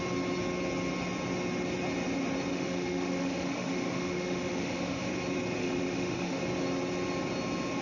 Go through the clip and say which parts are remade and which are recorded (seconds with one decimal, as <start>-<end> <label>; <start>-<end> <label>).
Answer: 0.0-2.5 recorded; 2.5-5.1 remade; 5.1-5.6 recorded; 5.6-6.4 remade; 6.4-7.8 recorded